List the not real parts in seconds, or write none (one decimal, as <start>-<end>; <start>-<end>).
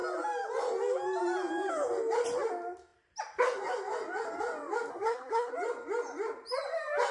4.9-5.5